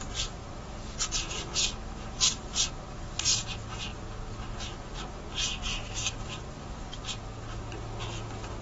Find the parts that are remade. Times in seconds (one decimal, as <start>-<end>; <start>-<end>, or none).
none